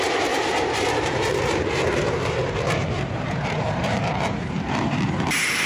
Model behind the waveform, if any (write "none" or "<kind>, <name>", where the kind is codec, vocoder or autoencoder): vocoder, BigVGAN v2